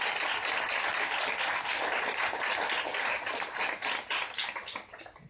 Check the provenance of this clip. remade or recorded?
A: recorded